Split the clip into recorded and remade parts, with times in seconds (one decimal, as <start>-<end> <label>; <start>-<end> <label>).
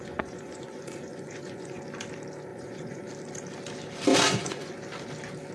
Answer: 0.0-1.8 remade; 1.8-2.5 recorded; 2.5-3.1 remade; 3.1-4.1 recorded; 4.1-4.7 remade; 4.7-5.5 recorded